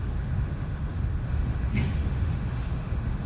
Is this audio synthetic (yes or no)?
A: yes